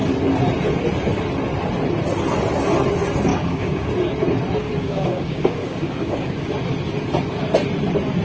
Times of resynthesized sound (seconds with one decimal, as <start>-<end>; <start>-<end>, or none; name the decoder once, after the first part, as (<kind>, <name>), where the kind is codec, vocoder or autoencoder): 3.3-3.9 (codec, DAC); 4.6-6.5